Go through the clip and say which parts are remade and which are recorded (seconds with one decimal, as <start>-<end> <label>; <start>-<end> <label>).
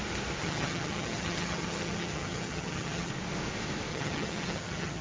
0.0-0.4 recorded; 0.4-3.1 remade; 3.1-3.9 recorded; 3.9-5.0 remade